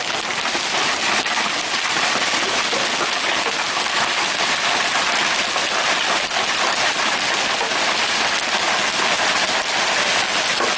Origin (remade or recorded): recorded